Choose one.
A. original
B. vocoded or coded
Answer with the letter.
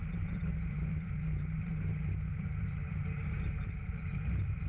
B